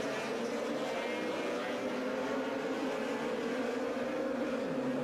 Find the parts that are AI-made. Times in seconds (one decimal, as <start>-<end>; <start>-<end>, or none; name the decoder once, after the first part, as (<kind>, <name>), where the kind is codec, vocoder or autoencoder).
none